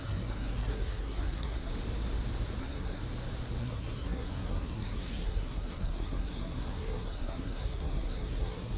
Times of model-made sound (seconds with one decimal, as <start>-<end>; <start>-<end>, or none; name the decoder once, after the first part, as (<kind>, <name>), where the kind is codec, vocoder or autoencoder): 0.0-1.7 (codec, SNAC); 2.6-3.0; 3.6-8.8